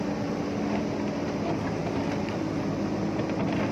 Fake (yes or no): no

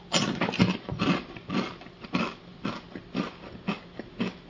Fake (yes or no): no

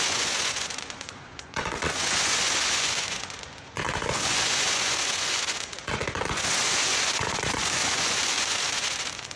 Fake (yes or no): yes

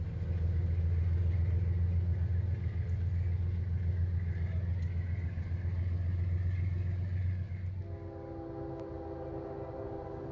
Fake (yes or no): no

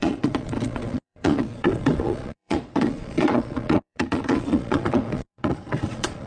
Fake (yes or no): yes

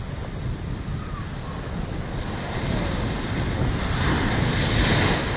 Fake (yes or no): no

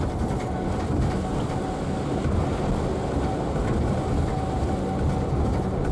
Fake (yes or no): no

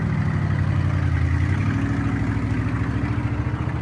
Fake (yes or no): no